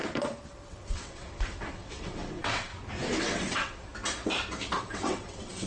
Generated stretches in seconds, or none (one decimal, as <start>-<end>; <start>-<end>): 0.5-2.7; 3.2-3.9; 4.8-5.7